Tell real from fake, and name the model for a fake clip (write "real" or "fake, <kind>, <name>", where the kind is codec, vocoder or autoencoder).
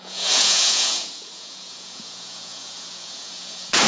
fake, vocoder, Vocos